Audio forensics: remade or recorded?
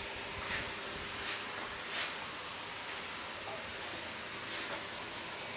recorded